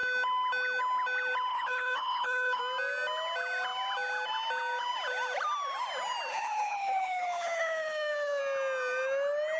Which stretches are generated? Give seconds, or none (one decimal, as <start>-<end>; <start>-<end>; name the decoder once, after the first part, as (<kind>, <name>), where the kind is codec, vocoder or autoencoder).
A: 1.5-2.6 (codec, HILCodec); 6.3-8.4